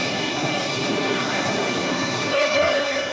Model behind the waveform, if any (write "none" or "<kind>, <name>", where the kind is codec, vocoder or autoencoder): codec, SNAC